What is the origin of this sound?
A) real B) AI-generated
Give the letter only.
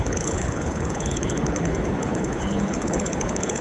B